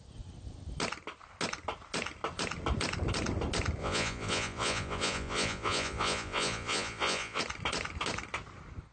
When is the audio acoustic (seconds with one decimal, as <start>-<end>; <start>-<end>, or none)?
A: 0.0-3.8; 7.4-8.9